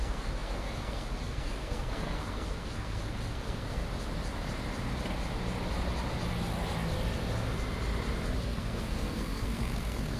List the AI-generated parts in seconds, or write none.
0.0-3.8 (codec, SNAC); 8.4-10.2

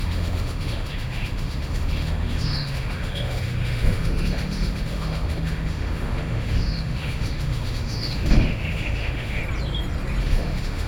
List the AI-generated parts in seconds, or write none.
0.0-9.4 (autoencoder, DAC-VAE); 10.2-10.9

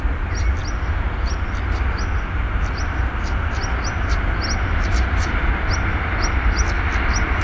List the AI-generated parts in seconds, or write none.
none

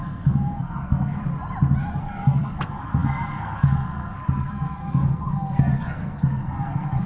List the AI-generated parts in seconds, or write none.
0.0-1.2 (codec, SNAC); 2.0-7.1

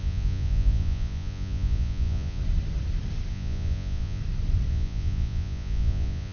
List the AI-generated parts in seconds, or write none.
0.0-2.4 (vocoder, Vocos); 3.3-4.2; 4.7-6.3